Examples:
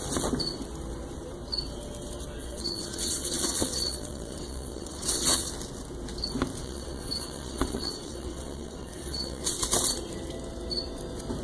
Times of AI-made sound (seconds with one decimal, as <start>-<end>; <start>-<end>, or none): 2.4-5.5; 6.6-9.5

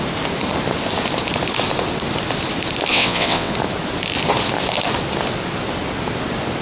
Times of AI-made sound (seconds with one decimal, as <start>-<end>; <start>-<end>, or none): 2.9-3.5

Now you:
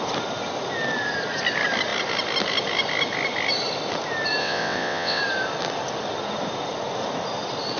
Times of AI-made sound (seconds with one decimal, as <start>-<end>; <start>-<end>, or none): 4.4-5.2

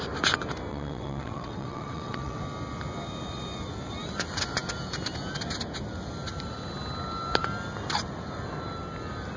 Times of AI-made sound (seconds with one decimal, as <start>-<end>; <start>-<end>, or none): 0.7-2.4

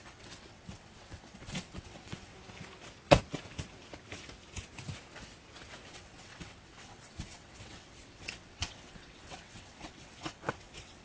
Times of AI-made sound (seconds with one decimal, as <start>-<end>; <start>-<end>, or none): 0.0-2.3; 5.9-11.0

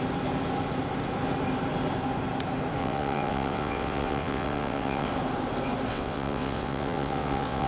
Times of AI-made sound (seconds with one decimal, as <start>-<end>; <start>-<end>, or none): 2.8-5.1; 5.9-7.7